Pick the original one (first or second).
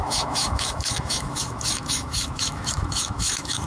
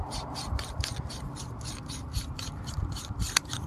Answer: second